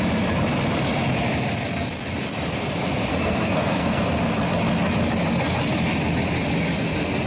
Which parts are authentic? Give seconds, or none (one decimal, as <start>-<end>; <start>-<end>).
0.0-3.1; 4.0-7.3